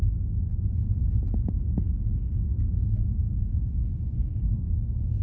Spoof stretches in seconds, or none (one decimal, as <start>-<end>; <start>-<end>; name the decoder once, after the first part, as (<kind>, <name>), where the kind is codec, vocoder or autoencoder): 0.5-3.6 (vocoder, Vocos)